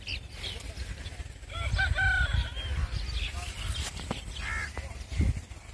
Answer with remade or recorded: recorded